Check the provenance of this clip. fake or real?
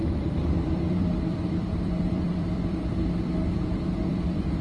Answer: fake